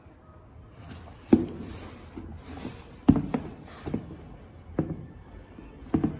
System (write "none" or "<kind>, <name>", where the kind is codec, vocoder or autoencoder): none